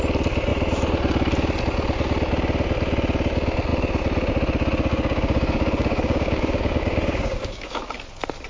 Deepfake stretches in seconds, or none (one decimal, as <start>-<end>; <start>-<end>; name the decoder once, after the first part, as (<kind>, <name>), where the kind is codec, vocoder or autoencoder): 4.9-7.8 (codec, DAC)